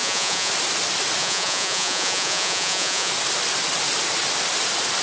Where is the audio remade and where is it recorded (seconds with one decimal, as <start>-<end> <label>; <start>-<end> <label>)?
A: 0.0-0.5 remade; 0.5-1.2 recorded; 1.2-3.1 remade; 3.1-5.0 recorded